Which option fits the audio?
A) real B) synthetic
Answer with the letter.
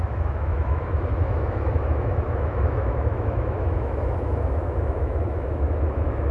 B